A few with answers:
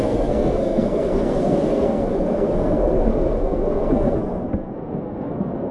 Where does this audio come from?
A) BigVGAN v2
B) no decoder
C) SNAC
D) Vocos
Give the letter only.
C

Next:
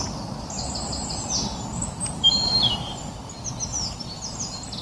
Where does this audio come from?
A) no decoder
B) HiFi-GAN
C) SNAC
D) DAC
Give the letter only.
A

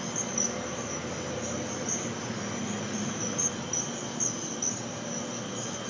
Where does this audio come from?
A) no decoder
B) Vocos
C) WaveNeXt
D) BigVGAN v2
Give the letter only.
A